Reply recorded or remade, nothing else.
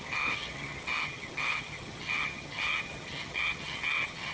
remade